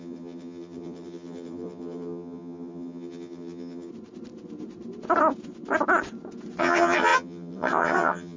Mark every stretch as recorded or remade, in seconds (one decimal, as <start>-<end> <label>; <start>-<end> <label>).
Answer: 0.0-3.9 remade; 3.9-6.6 recorded; 6.6-8.4 remade